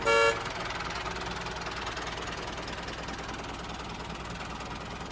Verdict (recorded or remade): recorded